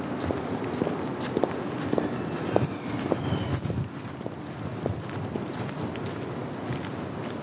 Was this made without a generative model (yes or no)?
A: yes